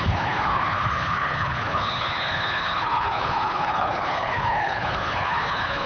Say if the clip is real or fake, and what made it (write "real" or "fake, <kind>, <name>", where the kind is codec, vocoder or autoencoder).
fake, codec, HILCodec